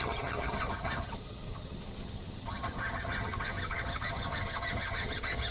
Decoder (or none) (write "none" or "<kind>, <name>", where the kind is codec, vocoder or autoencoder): vocoder, HiFi-GAN